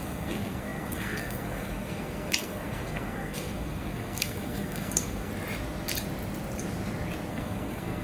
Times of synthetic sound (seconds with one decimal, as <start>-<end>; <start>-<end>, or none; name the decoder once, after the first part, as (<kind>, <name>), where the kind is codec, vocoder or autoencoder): 0.0-5.3 (codec, SNAC); 7.3-8.0